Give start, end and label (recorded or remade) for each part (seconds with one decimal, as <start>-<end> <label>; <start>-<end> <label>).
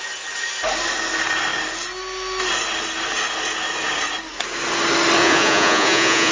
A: 0.0-5.2 recorded; 5.2-6.3 remade